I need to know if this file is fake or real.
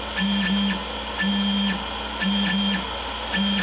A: real